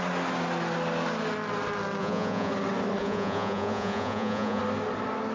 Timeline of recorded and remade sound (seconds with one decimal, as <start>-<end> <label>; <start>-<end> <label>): 0.0-2.0 recorded; 2.0-2.5 remade; 2.5-3.0 recorded; 3.0-4.6 remade; 4.6-5.3 recorded